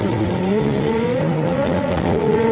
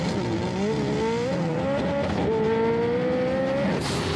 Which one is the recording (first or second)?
second